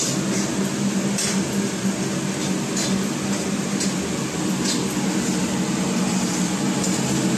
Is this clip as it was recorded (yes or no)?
yes